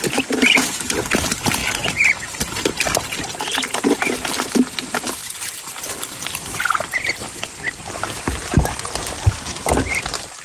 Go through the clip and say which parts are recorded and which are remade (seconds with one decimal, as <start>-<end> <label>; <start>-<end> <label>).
0.0-10.4 remade